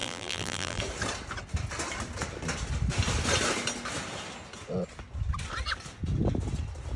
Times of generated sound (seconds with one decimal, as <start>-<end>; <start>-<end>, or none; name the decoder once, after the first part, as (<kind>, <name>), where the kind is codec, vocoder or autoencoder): 0.0-0.8 (vocoder, BigVGAN v2)